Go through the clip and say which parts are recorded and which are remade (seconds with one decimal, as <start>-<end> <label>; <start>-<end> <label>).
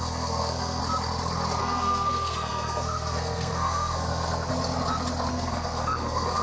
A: 0.0-0.8 remade; 0.8-1.6 recorded; 1.6-4.5 remade; 4.5-5.3 recorded; 5.3-6.4 remade